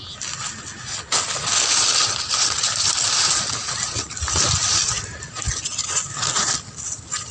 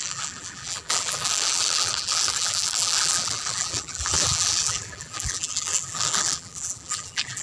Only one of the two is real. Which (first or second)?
first